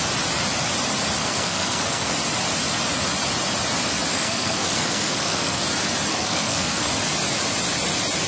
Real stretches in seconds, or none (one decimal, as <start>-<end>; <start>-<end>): 0.0-1.2; 2.1-4.1; 5.6-6.1; 6.9-8.3